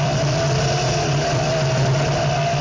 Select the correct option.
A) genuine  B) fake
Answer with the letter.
A